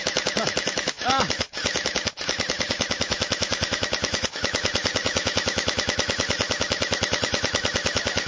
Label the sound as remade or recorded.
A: remade